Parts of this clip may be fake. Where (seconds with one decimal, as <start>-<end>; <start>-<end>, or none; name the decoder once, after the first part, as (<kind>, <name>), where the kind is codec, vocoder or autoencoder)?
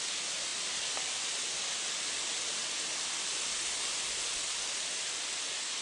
none